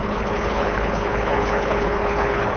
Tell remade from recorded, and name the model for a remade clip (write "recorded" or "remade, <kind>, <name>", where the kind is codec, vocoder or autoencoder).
remade, codec, HILCodec